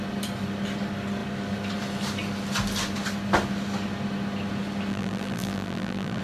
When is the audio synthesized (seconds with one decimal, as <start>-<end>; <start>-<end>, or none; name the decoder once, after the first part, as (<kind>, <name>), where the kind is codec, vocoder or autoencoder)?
4.9-6.2 (vocoder, BigVGAN v2)